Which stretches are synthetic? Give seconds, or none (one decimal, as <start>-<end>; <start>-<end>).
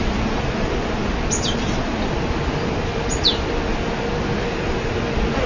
none